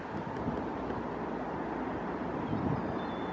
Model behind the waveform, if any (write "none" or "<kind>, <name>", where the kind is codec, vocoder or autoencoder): none